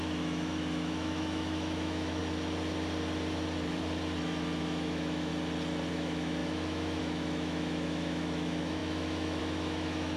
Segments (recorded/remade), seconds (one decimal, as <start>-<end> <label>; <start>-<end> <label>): 0.0-2.2 remade; 2.2-4.6 recorded; 4.6-5.3 remade; 5.3-5.9 recorded; 5.9-10.2 remade